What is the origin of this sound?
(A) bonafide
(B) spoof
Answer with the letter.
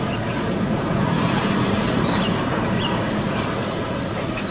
B